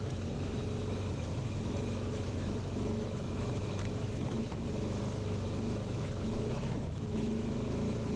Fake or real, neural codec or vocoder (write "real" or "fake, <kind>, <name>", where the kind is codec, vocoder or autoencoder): fake, autoencoder, DAC-VAE